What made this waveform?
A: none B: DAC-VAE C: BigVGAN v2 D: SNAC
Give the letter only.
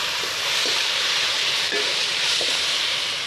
C